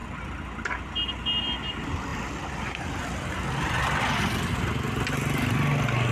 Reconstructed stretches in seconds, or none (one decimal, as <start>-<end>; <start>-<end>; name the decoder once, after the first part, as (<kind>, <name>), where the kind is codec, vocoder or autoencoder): 2.1-4.0 (vocoder, BigVGAN v2)